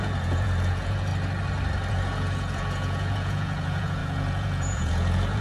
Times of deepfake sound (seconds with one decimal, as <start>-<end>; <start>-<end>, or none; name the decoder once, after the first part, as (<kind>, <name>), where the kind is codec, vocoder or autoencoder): 0.0-1.1 (vocoder, Vocos); 1.9-5.4